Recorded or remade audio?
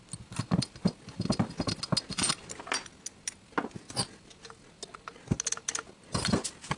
recorded